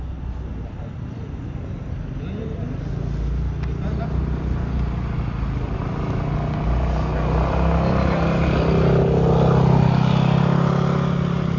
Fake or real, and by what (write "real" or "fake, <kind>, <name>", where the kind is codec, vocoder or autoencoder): real